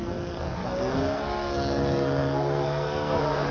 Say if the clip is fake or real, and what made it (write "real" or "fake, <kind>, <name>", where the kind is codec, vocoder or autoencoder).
fake, codec, SNAC